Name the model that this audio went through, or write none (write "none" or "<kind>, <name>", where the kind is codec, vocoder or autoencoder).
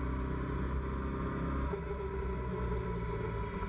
none